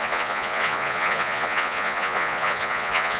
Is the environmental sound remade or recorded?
remade